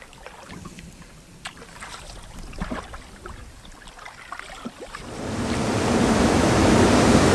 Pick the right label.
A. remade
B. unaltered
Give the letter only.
B